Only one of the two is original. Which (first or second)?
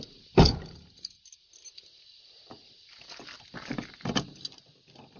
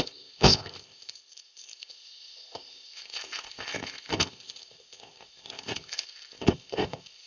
first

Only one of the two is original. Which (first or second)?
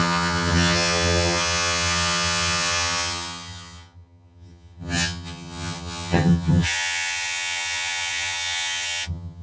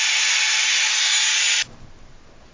second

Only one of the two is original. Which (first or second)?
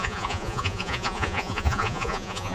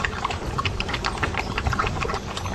second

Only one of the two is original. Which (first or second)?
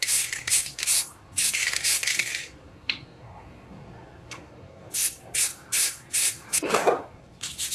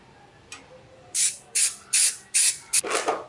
second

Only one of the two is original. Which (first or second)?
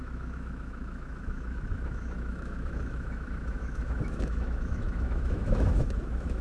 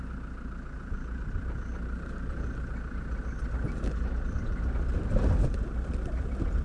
second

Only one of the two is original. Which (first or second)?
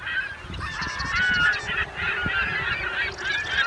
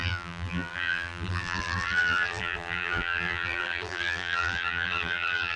first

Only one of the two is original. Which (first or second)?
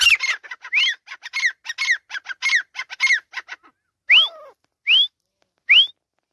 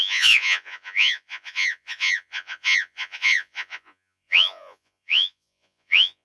first